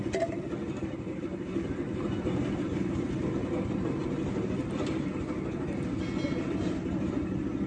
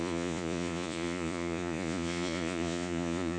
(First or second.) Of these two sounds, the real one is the first